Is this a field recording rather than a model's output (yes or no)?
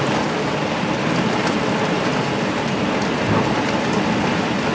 yes